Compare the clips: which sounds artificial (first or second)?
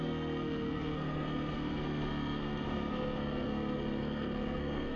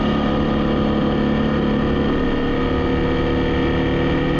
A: first